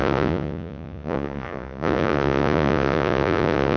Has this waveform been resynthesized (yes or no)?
yes